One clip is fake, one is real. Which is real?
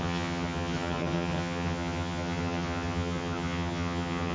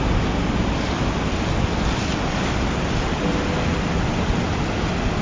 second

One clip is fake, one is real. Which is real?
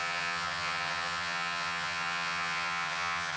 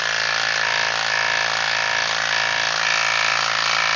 second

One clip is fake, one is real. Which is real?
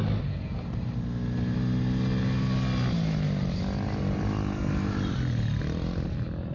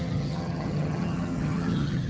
first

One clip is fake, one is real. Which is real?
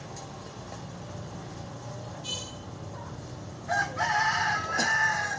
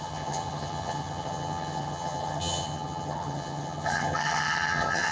first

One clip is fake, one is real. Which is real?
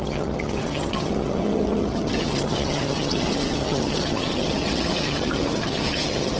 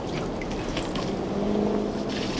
second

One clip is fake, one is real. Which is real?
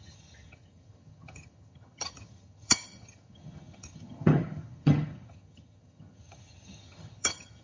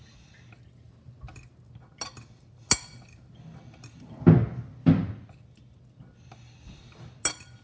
second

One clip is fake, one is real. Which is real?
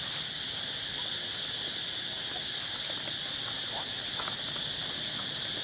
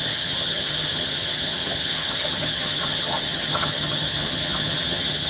first